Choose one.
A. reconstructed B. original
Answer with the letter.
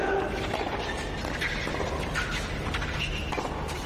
B